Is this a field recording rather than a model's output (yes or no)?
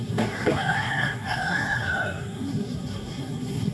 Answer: no